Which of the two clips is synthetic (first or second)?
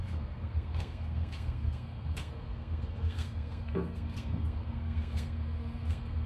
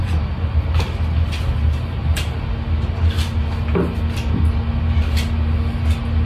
first